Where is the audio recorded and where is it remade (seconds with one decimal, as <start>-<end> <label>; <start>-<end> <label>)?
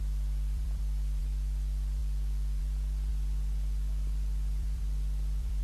0.0-1.2 remade; 1.2-2.0 recorded; 2.0-2.6 remade; 2.6-3.1 recorded; 3.1-5.6 remade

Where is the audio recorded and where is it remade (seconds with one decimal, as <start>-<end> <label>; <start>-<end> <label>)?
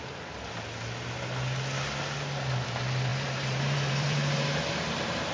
0.0-3.1 recorded; 3.1-5.3 remade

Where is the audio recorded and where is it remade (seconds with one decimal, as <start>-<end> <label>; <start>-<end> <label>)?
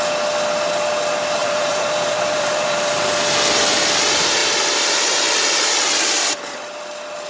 0.0-1.4 recorded; 1.4-3.0 remade; 3.0-7.3 recorded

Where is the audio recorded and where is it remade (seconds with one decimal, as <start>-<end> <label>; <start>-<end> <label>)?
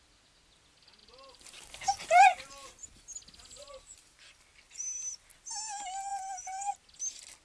0.0-1.0 recorded; 1.0-2.5 remade; 2.5-6.1 recorded; 6.1-6.7 remade; 6.7-7.4 recorded